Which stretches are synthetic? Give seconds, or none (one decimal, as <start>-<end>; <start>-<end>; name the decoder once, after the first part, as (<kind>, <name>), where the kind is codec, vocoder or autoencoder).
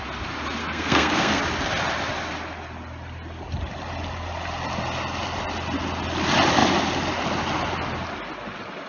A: 0.6-1.4 (codec, SNAC)